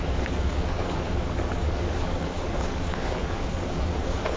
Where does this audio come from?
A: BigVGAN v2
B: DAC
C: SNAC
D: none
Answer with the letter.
B